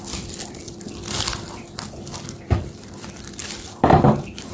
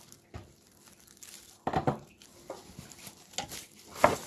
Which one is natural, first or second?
second